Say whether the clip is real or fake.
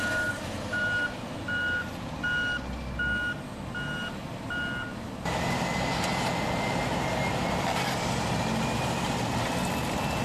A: real